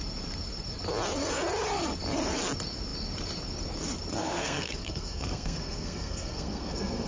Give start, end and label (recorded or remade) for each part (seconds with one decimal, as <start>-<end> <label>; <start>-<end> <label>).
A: 0.0-4.2 recorded; 4.2-7.1 remade